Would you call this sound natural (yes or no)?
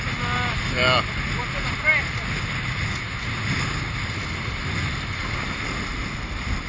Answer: yes